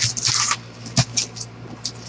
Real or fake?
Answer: real